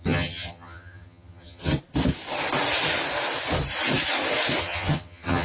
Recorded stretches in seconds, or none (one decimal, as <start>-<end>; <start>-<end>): 1.7-4.6